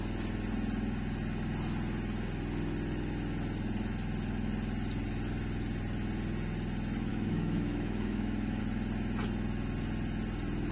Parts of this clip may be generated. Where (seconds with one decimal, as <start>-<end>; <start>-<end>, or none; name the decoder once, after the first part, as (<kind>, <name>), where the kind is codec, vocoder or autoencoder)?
7.1-8.6 (autoencoder, DAC-VAE)